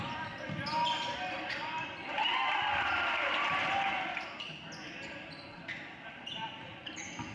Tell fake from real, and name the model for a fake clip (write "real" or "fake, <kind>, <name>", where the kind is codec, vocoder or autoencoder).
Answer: real